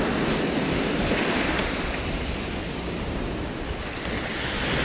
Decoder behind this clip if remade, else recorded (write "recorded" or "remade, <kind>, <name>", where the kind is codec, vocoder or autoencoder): recorded